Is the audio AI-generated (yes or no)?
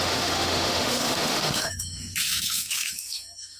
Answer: yes